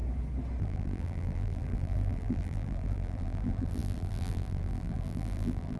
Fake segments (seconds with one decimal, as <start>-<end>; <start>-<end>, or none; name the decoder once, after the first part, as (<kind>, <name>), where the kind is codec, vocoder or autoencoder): 0.6-5.8 (vocoder, BigVGAN v2)